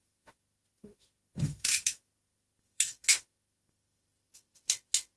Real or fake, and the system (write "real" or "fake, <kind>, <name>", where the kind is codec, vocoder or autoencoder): fake, autoencoder, DAC-VAE